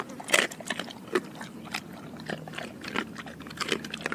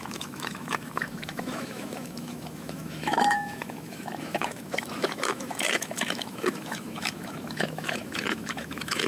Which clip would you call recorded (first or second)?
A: first